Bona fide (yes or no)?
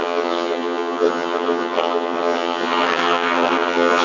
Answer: no